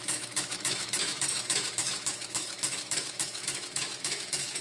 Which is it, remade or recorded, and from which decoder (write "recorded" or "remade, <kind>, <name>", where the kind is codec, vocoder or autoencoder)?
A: remade, autoencoder, DAC-VAE